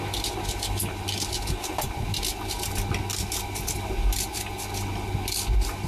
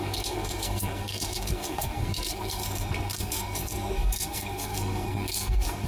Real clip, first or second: first